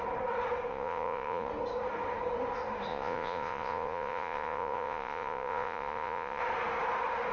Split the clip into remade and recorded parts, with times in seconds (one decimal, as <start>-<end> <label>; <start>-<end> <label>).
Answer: 0.0-0.7 recorded; 0.7-1.5 remade; 1.5-2.9 recorded; 2.9-6.4 remade; 6.4-7.3 recorded